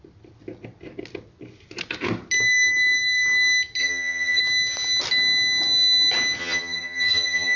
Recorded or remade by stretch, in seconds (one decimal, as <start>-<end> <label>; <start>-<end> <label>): 0.0-3.8 recorded; 3.8-4.4 remade; 4.4-6.4 recorded; 6.4-7.6 remade